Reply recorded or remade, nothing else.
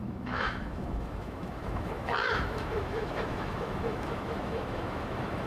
remade